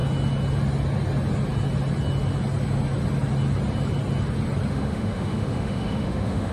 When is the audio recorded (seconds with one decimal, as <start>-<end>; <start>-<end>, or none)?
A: 0.0-4.7